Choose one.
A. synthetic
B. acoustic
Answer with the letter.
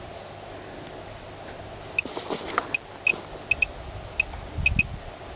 B